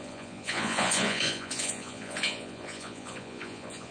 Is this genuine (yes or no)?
no